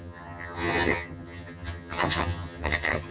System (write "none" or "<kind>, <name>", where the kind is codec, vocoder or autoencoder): vocoder, HiFi-GAN